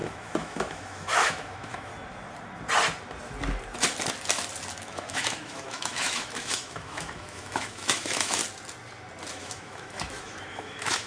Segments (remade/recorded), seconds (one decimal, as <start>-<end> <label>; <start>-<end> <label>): 0.0-1.9 remade; 1.9-4.8 recorded; 4.8-8.4 remade; 8.4-9.3 recorded; 9.3-11.1 remade